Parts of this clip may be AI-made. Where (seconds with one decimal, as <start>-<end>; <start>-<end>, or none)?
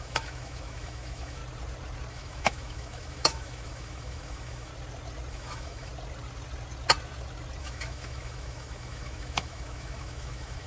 0.0-1.4; 2.1-4.7; 5.3-5.9; 7.6-10.7